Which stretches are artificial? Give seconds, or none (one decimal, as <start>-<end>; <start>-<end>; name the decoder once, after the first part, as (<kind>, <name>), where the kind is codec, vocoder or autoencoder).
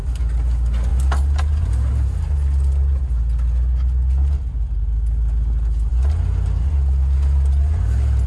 none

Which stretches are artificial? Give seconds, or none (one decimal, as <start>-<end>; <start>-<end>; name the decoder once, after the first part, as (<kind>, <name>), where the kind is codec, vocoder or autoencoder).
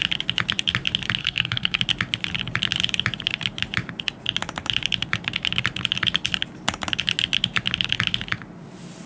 1.2-1.8 (codec, SNAC)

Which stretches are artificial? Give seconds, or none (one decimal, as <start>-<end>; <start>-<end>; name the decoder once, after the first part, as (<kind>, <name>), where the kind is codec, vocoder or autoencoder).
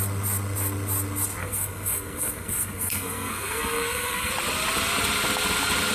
1.4-4.3 (codec, SNAC)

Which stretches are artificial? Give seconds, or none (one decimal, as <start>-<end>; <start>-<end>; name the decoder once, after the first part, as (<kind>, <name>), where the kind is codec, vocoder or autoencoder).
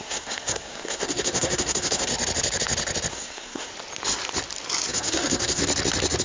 0.0-2.1 (codec, SNAC); 3.1-3.7; 4.9-5.6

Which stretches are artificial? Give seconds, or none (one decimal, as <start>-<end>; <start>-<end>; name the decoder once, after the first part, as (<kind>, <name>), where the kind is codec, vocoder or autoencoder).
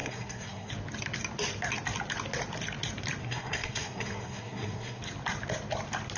0.0-0.7 (codec, SNAC); 3.2-5.0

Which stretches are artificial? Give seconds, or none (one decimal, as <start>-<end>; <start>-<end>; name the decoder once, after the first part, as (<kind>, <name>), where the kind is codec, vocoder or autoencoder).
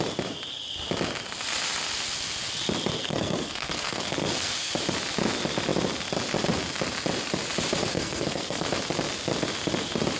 3.0-4.7 (codec, SNAC); 7.9-8.7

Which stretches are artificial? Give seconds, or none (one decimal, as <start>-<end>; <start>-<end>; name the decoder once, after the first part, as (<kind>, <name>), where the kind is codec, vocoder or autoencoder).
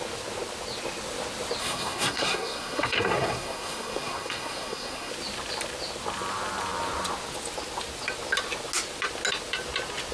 1.6-5.1 (codec, SNAC)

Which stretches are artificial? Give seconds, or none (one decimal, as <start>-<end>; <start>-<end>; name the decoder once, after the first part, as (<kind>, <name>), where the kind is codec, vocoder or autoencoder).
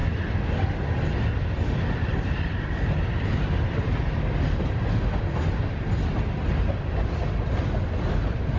none